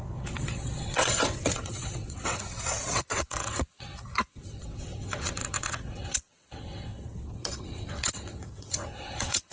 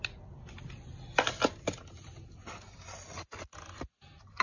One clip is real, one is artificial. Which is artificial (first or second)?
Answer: first